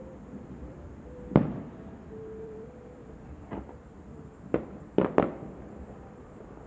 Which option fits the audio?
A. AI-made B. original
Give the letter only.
A